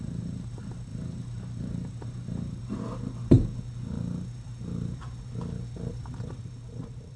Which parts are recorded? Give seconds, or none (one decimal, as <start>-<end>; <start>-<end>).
2.6-5.9